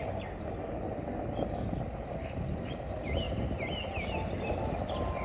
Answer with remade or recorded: recorded